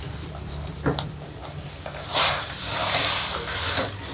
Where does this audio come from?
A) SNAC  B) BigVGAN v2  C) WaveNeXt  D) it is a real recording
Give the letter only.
B